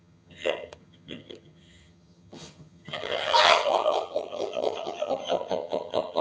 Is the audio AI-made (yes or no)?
yes